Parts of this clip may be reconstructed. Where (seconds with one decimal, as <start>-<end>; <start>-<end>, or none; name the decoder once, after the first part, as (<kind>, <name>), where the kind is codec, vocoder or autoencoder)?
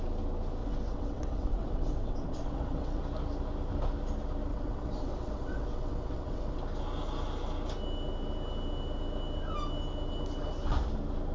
0.6-3.0 (vocoder, WaveNeXt); 4.5-6.6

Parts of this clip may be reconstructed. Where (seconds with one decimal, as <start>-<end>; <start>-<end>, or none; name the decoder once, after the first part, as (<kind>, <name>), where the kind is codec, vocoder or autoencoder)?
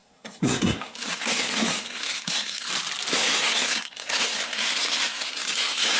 0.0-2.7 (codec, SNAC); 3.1-6.0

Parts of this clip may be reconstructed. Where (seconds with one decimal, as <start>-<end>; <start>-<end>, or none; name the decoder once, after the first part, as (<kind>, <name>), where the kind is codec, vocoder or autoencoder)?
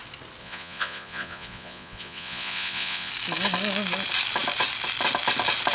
0.4-3.1 (vocoder, Vocos)